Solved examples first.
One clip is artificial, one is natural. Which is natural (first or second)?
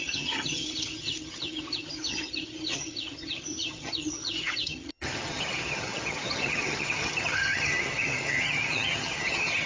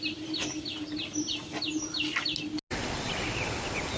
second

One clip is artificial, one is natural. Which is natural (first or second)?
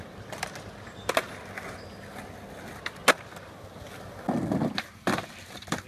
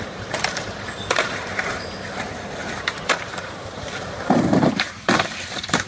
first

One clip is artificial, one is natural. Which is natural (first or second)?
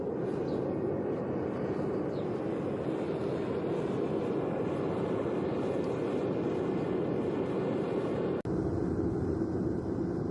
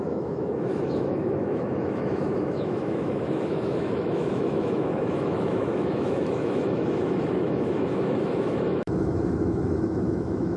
first